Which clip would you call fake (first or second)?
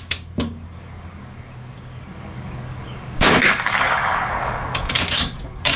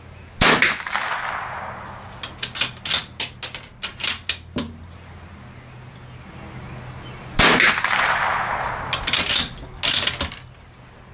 first